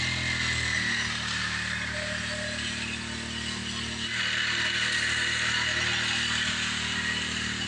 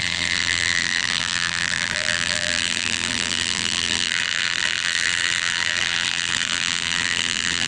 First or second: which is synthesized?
second